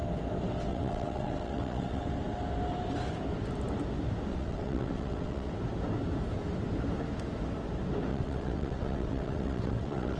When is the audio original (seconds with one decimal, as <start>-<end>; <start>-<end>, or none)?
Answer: 0.0-0.7; 2.0-4.3; 5.5-8.1

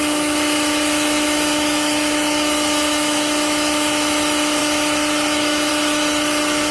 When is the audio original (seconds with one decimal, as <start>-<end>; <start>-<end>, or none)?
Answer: none

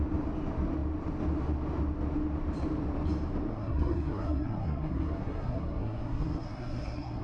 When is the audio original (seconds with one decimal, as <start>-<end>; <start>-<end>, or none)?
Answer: 0.0-3.5